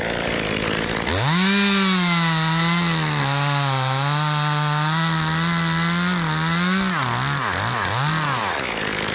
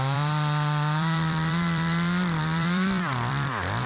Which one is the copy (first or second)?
second